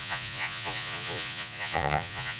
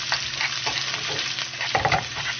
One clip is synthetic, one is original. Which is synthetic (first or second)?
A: first